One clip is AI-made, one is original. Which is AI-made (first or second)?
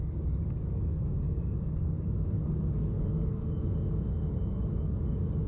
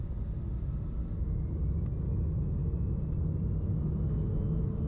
first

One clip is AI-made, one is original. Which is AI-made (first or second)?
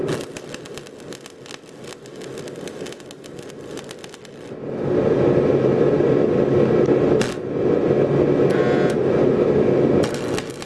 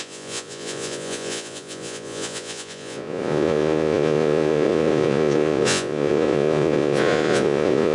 second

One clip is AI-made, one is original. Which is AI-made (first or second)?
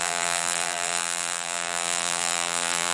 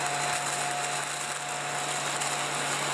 first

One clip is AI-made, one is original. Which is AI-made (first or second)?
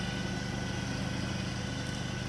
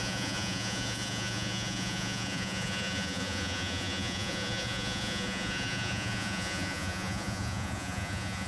second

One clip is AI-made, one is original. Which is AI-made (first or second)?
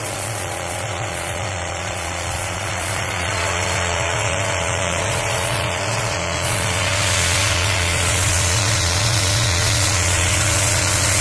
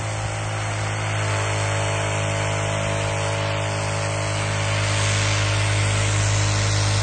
first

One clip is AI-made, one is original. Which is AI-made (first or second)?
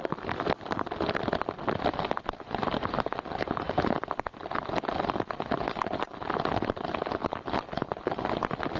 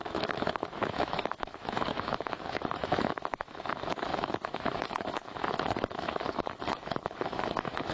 second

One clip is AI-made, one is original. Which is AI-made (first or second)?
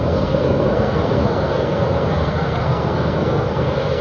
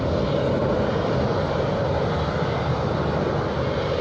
first